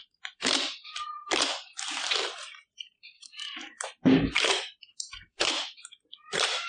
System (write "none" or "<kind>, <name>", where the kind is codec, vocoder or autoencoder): vocoder, BigVGAN v2